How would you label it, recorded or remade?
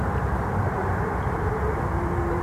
recorded